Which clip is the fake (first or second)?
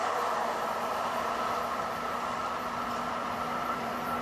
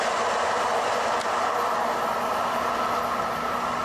first